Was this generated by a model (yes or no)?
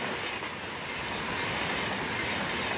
no